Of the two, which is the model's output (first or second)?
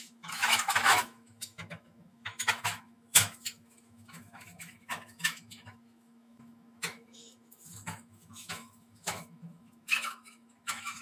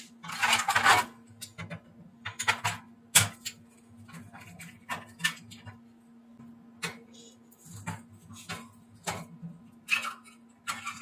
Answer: first